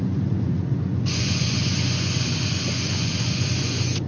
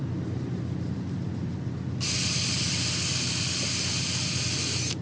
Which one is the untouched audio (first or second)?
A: second